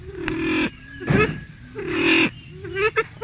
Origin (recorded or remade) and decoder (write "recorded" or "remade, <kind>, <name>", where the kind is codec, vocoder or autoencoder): recorded